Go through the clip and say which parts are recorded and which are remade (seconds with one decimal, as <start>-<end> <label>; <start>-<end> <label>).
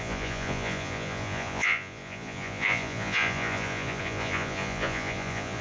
0.0-5.6 remade